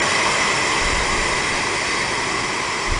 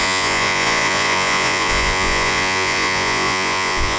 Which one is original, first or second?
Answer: first